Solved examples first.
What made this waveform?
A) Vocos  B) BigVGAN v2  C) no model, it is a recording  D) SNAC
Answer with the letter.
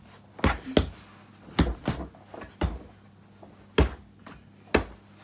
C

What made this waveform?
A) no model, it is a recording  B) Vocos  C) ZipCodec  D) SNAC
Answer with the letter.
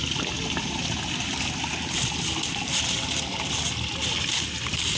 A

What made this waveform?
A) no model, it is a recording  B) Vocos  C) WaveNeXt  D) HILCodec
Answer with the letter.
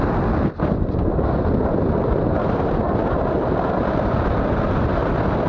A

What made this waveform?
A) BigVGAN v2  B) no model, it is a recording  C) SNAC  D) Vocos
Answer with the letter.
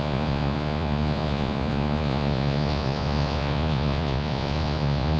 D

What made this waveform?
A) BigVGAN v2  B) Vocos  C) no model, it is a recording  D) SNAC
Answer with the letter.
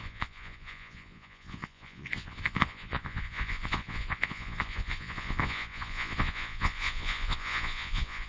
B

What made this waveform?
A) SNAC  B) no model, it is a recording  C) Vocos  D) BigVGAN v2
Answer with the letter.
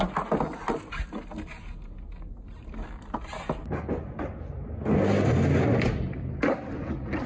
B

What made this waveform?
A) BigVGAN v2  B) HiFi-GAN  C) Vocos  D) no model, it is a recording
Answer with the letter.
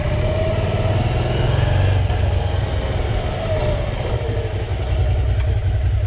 D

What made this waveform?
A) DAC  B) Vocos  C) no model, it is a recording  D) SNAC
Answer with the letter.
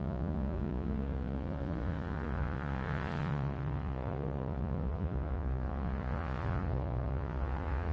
B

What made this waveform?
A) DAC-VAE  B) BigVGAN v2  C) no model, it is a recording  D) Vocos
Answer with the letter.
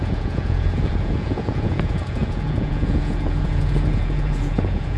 D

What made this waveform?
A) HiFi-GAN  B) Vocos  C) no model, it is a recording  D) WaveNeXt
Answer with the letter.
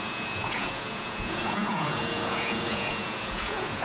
B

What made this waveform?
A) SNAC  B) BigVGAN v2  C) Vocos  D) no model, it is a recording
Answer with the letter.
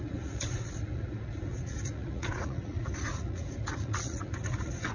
C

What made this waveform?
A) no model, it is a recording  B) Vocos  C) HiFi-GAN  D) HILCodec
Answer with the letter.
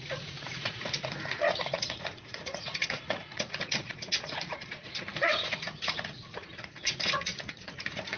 B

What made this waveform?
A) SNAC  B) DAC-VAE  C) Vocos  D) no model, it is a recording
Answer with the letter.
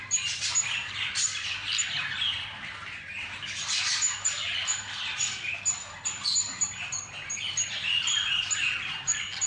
D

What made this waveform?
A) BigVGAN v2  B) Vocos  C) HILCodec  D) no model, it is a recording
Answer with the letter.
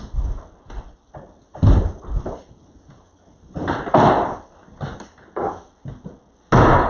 D